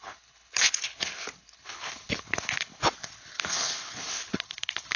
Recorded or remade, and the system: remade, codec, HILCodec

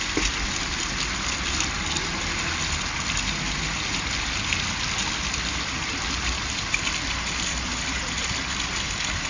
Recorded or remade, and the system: recorded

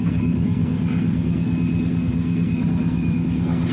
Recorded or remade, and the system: remade, codec, SNAC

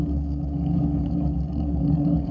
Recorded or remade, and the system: remade, codec, DAC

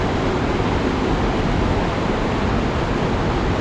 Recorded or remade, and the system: recorded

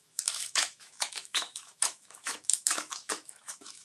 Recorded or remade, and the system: remade, autoencoder, DAC-VAE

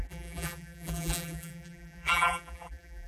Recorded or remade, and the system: remade, vocoder, BigVGAN v2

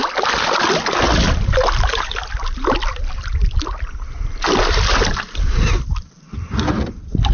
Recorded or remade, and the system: recorded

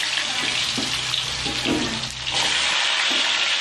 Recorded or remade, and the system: recorded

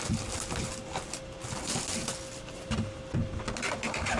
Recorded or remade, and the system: recorded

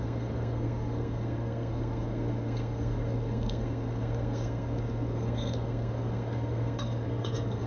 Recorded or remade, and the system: remade, codec, SNAC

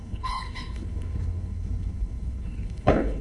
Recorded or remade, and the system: remade, codec, HILCodec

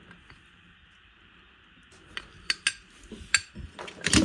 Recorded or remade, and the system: recorded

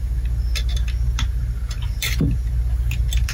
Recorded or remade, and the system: recorded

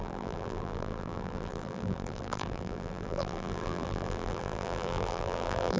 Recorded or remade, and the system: remade, vocoder, BigVGAN v2